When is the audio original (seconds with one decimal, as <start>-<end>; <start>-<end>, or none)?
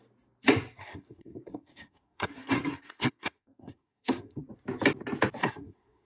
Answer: 0.0-0.8; 4.4-5.4